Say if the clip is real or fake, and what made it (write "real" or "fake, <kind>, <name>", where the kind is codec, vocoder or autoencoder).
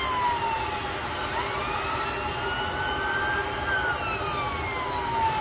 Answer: real